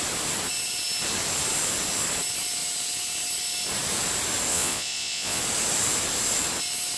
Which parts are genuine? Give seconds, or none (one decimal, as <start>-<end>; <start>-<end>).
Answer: 0.0-4.5; 5.4-7.0